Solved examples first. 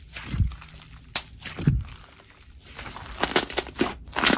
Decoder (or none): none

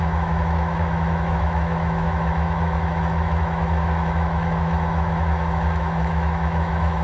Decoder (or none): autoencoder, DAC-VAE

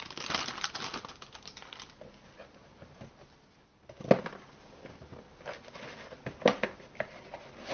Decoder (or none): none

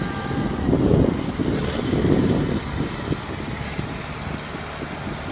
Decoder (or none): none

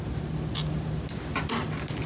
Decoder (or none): none